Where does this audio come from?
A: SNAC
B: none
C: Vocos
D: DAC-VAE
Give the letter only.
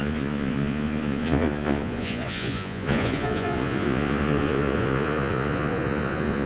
C